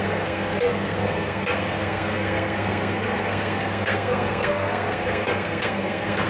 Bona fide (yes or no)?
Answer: no